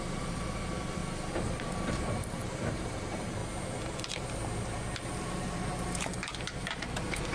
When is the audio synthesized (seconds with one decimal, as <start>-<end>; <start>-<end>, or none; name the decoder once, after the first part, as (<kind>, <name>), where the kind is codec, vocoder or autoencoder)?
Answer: 0.0-1.0 (vocoder, BigVGAN v2); 1.5-3.4; 5.2-7.3